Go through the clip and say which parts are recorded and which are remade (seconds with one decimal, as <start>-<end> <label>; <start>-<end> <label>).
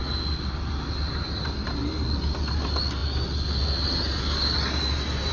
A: 0.0-5.3 recorded